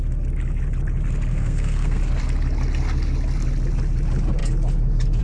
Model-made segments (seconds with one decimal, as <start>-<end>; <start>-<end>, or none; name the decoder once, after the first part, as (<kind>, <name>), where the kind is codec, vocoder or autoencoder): 1.3-2.0 (codec, SNAC)